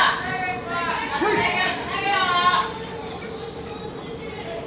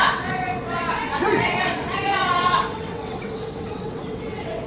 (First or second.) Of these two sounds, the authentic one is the first